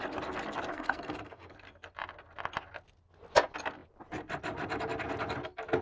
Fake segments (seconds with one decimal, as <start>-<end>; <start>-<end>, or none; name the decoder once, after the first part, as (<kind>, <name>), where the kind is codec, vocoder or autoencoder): 0.7-1.5 (codec, SNAC)